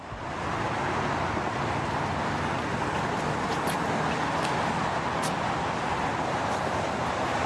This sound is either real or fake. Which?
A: real